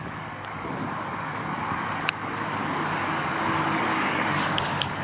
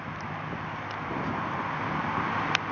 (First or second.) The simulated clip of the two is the first